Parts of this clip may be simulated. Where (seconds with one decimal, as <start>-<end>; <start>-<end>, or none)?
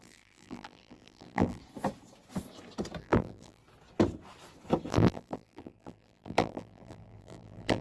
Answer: 0.0-1.6; 3.0-3.6; 4.9-7.8